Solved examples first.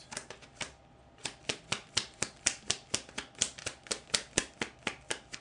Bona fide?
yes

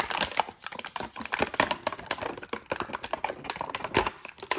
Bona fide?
yes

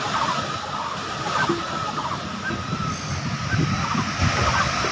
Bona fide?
yes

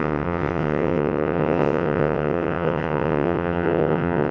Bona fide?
no